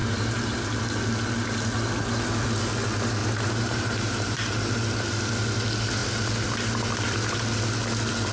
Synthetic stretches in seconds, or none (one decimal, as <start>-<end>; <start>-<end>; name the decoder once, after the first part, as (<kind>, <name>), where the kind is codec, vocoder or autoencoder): 0.0-0.8 (vocoder, BigVGAN v2); 3.2-4.6